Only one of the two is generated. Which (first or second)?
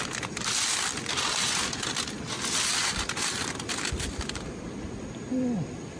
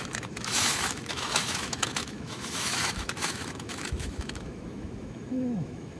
second